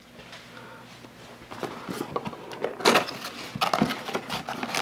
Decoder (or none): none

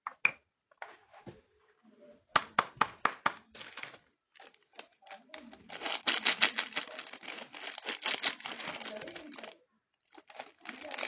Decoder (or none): none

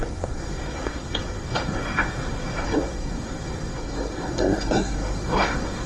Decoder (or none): codec, SNAC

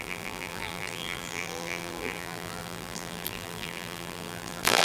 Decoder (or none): vocoder, BigVGAN v2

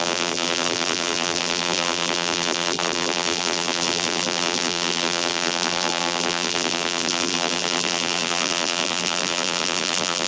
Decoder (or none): vocoder, BigVGAN v2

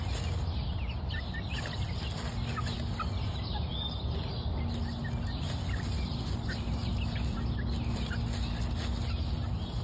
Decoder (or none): none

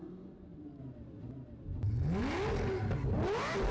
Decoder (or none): none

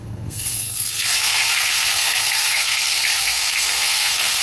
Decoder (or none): codec, SNAC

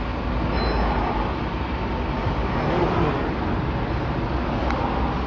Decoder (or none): none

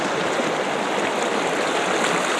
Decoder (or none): none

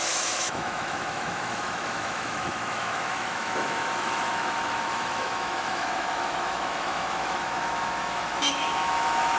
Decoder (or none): autoencoder, DAC-VAE